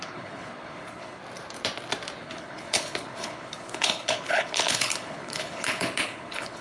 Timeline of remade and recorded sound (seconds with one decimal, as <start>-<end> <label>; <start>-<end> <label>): 0.0-1.2 remade; 1.2-2.2 recorded; 2.2-6.6 remade